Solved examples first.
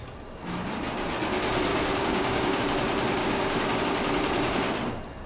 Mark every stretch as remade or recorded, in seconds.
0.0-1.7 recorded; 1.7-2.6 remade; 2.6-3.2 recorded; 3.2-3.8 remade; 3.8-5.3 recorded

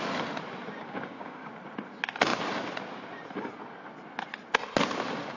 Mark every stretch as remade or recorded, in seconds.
0.0-0.8 recorded; 0.8-1.5 remade; 1.5-5.4 recorded

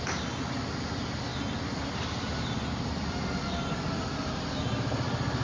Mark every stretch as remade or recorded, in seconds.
0.0-5.4 recorded